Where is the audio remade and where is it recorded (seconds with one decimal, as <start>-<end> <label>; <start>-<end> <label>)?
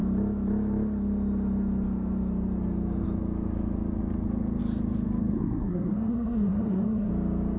0.0-5.3 recorded; 5.3-7.1 remade; 7.1-7.6 recorded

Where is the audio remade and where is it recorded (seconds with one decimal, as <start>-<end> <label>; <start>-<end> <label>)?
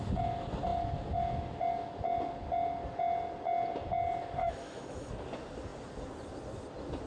0.0-4.4 recorded; 4.4-5.1 remade; 5.1-7.1 recorded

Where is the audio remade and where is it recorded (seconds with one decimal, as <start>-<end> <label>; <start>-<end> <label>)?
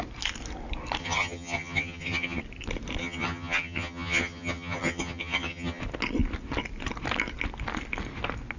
0.0-1.0 recorded; 1.0-2.4 remade; 2.4-3.0 recorded; 3.0-5.8 remade; 5.8-8.6 recorded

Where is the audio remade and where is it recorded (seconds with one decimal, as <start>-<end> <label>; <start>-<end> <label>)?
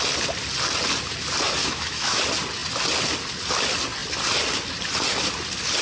0.0-1.6 recorded; 1.6-2.2 remade; 2.2-5.8 recorded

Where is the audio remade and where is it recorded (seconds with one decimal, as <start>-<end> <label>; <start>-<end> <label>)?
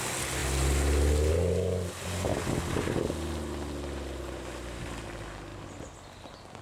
0.0-6.6 recorded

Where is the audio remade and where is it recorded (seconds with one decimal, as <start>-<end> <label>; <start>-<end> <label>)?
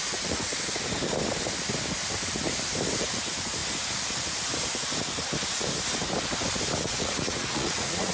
0.0-0.5 remade; 0.5-3.0 recorded; 3.0-3.6 remade; 3.6-6.8 recorded; 6.8-8.1 remade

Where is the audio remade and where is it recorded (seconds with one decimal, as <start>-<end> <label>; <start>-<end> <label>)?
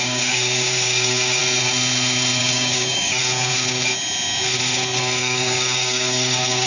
0.0-1.4 remade; 1.4-2.4 recorded; 2.4-3.2 remade; 3.2-5.2 recorded; 5.2-6.7 remade